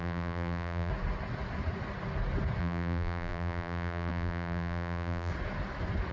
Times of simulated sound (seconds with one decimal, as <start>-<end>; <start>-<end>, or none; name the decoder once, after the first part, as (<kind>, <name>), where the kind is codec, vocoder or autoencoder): 0.0-0.9 (vocoder, BigVGAN v2); 2.6-5.3